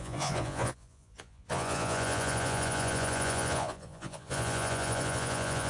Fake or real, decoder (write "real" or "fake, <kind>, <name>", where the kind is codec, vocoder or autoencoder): fake, vocoder, Vocos